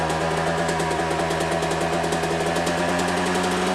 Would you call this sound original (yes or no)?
yes